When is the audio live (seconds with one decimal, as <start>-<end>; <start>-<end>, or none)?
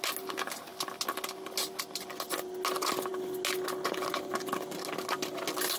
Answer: 0.0-5.8